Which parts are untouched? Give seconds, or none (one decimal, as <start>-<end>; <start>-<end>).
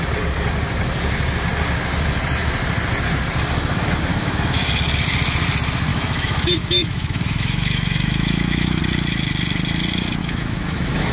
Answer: 0.0-4.1; 4.7-5.9; 8.8-10.2